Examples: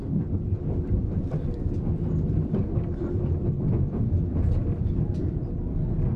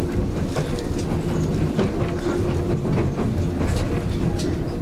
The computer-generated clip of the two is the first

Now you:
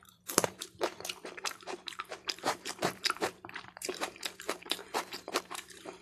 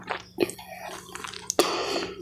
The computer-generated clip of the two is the first